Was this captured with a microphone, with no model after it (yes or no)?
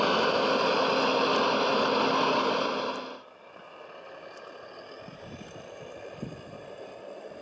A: yes